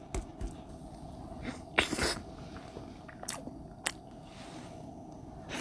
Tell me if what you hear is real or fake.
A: real